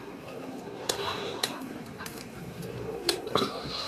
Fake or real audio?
fake